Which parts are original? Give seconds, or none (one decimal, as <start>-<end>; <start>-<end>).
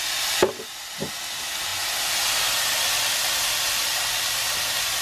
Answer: 0.0-5.0